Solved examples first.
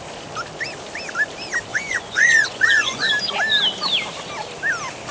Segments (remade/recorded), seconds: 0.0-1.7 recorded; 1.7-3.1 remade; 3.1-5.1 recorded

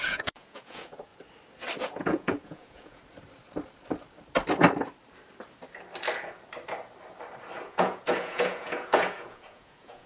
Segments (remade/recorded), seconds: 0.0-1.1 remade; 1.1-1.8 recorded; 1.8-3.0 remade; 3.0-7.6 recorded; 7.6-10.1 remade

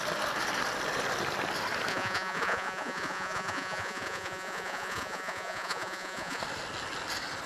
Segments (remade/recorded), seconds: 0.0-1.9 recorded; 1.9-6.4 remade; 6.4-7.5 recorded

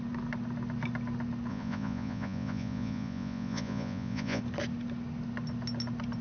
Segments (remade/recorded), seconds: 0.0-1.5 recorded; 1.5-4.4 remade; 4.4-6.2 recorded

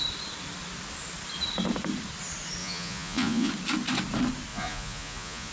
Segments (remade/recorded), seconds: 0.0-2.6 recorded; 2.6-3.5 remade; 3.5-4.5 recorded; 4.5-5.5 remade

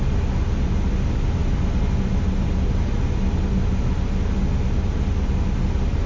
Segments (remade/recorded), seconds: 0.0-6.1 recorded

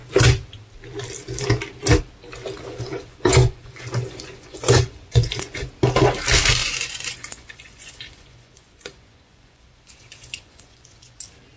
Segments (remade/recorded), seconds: 0.0-2.7 recorded; 2.7-5.7 remade; 5.7-6.6 recorded; 6.6-11.2 remade; 11.2-11.6 recorded

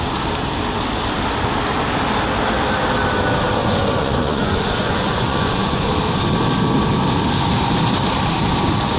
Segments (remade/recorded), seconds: 0.0-3.6 recorded; 3.6-5.9 remade; 5.9-9.0 recorded